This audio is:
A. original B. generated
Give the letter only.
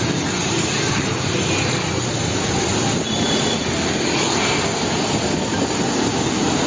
A